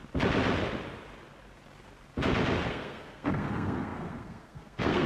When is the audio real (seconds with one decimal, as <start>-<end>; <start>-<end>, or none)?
0.0-2.7